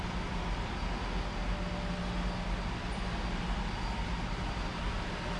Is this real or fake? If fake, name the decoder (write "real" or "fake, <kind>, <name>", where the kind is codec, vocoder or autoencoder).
real